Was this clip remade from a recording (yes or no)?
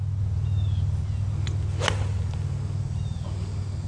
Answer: no